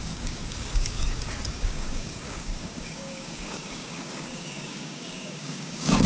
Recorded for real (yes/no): no